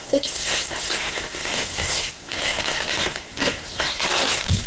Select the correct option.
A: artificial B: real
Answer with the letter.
A